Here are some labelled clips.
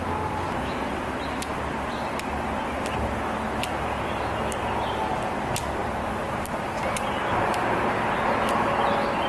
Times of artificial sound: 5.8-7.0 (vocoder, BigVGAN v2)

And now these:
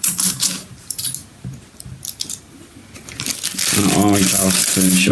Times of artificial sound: 0.0-1.2 (vocoder, BigVGAN v2); 4.3-5.1

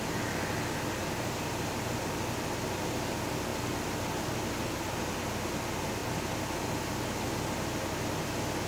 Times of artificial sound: none

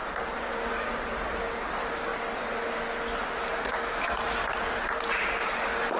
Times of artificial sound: none

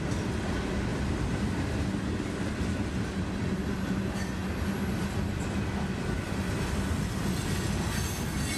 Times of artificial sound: 0.9-1.6 (vocoder, BigVGAN v2); 4.4-7.5

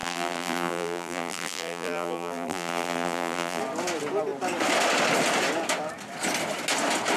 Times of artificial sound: 0.0-3.6 (vocoder, BigVGAN v2)

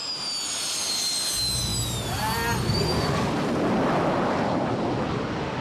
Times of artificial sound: none

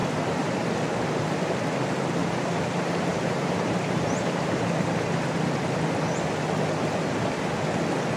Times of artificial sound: 0.0-0.6 (vocoder, BigVGAN v2); 2.2-4.9